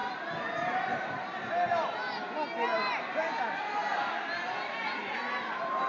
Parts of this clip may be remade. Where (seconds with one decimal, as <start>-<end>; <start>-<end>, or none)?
none